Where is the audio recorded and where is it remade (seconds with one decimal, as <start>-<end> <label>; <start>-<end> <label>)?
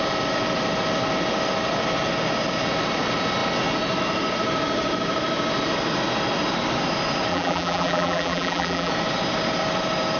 0.0-7.3 recorded; 7.3-8.9 remade; 8.9-10.2 recorded